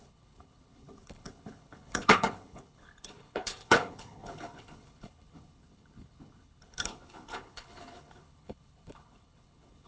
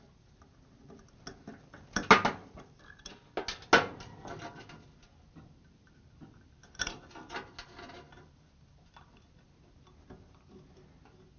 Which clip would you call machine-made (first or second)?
first